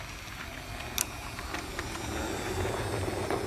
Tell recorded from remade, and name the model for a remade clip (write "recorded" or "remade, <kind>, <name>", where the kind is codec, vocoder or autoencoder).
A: recorded